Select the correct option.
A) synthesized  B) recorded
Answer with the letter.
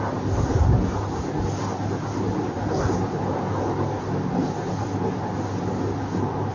B